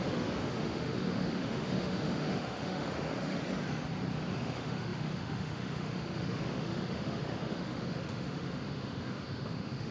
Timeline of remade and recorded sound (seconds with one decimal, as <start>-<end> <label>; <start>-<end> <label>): 0.0-3.4 remade; 3.4-4.3 recorded; 4.3-9.9 remade